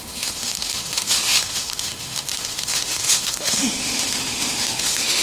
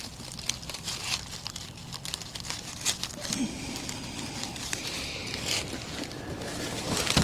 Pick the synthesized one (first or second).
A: first